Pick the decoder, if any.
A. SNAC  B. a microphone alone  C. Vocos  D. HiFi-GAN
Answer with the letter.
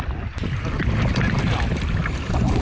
B